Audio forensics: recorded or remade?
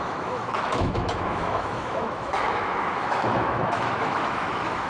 remade